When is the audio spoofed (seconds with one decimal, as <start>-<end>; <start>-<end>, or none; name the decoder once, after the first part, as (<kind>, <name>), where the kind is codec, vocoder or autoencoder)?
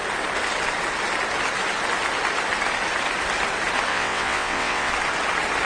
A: 3.9-4.9 (vocoder, WaveNeXt)